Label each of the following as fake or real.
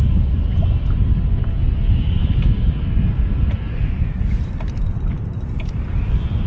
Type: real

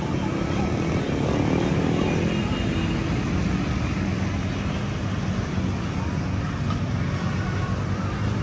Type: real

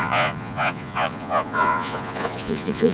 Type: fake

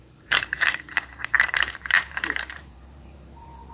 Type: fake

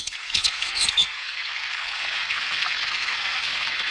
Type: fake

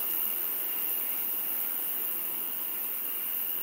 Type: real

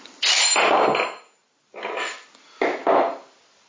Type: real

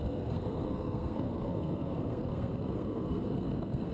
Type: fake